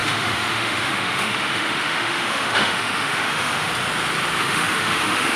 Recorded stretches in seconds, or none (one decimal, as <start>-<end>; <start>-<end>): 3.7-4.4